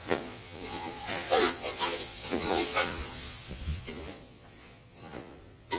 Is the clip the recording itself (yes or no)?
no